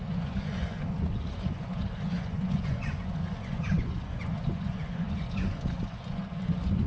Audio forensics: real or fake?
fake